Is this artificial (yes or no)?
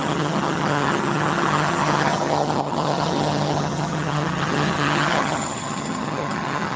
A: yes